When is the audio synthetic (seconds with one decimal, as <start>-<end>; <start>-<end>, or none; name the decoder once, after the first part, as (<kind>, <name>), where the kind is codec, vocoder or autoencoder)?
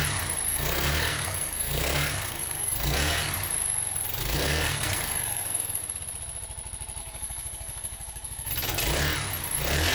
0.5-3.3 (codec, SNAC); 4.2-5.8; 7.0-8.5